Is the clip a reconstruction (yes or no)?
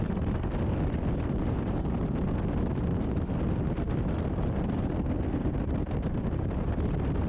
no